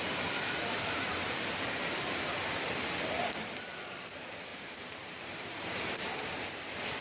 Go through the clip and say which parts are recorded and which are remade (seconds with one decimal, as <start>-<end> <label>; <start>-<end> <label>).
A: 0.0-4.5 recorded; 4.5-6.0 remade; 6.0-7.0 recorded